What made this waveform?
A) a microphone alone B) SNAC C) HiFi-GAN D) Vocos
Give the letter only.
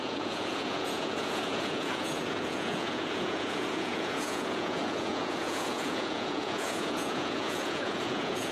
D